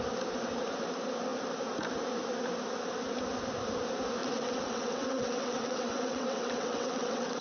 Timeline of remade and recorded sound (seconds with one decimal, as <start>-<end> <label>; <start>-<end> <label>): 0.0-4.2 recorded; 4.2-7.4 remade